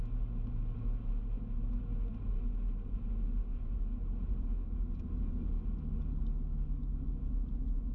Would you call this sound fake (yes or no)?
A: no